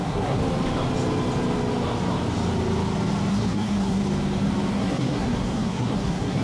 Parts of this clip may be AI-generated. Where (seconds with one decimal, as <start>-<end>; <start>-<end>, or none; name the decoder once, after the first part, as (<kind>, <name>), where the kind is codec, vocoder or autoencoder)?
0.0-0.4 (codec, SNAC); 3.3-4.0; 4.7-6.4